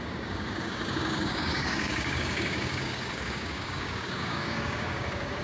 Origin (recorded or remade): remade